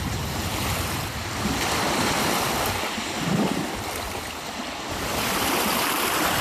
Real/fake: fake